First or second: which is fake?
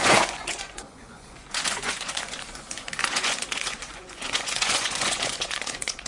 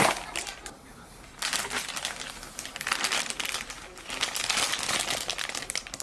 first